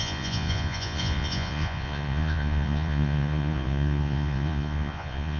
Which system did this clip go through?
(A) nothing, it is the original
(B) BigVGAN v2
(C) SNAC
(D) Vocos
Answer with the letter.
D